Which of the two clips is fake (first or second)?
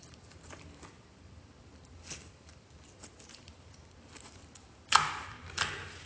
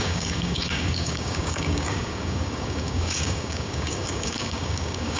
second